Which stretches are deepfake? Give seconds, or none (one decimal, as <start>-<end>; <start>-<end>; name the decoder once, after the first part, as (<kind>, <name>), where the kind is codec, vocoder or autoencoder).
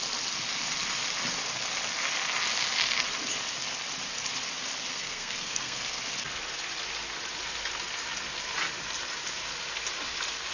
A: 4.9-6.0 (codec, SNAC)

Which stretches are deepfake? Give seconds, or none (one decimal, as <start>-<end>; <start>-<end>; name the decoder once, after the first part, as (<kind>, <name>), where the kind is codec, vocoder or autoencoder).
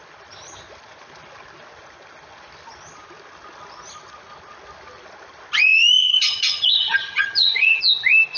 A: 6.0-7.8 (vocoder, HiFi-GAN)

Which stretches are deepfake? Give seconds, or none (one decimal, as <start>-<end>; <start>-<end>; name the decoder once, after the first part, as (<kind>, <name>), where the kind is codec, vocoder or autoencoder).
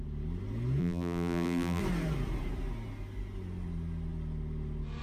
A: 0.8-1.8 (vocoder, BigVGAN v2)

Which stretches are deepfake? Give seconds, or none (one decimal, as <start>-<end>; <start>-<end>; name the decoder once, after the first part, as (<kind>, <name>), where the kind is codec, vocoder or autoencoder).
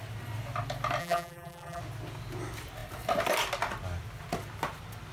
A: 1.0-1.8 (vocoder, BigVGAN v2)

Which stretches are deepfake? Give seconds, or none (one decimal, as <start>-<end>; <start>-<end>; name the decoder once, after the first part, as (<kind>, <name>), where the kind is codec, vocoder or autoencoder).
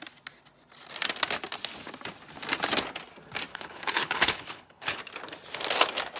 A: 3.5-5.0 (codec, HILCodec)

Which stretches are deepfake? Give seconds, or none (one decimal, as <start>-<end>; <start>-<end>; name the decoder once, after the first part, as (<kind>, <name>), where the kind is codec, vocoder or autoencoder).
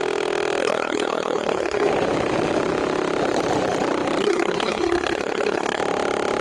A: 0.6-1.9 (codec, SNAC); 4.2-5.8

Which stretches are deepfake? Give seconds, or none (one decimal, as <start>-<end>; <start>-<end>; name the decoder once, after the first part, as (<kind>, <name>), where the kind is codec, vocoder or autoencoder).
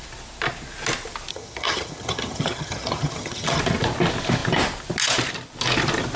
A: 1.3-3.6 (vocoder, HiFi-GAN)